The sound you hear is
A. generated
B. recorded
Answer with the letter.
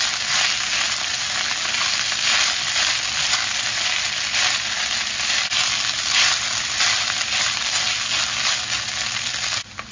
B